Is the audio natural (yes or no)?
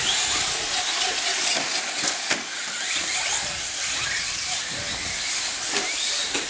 yes